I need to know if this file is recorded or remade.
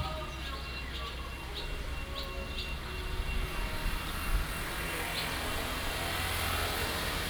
recorded